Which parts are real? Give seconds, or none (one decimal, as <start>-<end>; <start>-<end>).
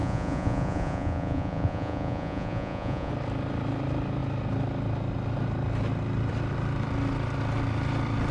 3.1-8.3